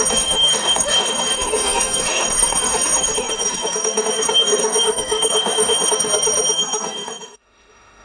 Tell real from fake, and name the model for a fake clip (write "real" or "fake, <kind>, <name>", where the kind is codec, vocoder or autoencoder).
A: fake, autoencoder, DAC-VAE